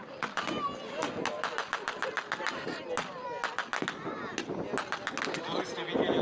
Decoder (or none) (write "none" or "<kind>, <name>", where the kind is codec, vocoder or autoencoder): none